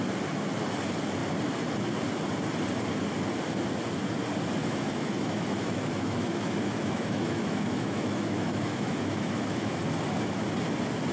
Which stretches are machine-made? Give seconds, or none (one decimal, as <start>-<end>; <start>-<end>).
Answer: 4.6-9.8